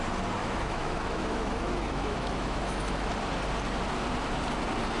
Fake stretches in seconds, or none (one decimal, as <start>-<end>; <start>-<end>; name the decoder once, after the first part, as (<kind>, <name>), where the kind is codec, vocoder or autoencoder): 0.4-3.1 (autoencoder, DAC-VAE)